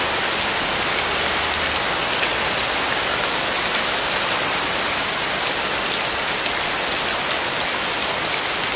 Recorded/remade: recorded